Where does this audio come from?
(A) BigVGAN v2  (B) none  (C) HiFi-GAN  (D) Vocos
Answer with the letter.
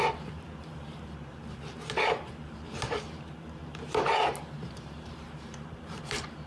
A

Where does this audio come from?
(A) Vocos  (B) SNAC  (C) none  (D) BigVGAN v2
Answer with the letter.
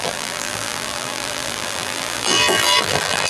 D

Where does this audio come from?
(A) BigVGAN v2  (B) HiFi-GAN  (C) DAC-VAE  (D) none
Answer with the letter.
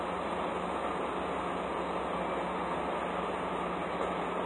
D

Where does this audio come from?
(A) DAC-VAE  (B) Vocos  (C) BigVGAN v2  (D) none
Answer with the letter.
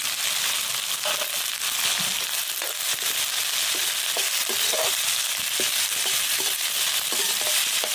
D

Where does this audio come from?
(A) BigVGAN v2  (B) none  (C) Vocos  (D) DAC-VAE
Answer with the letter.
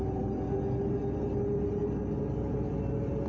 B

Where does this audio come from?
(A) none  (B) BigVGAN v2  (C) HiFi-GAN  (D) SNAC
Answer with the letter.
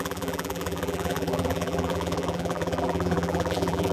B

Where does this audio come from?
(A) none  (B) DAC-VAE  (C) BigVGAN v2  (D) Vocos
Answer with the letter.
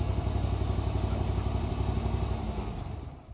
C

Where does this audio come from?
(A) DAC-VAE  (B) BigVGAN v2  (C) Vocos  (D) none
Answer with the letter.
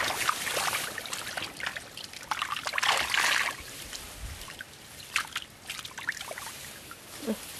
D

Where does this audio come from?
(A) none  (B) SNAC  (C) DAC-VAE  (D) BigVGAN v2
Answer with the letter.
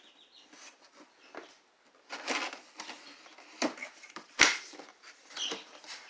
D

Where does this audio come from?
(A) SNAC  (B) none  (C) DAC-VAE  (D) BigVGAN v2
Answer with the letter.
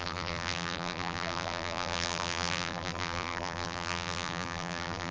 D